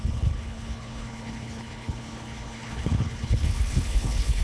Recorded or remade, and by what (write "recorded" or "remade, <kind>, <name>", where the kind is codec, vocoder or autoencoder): remade, codec, HILCodec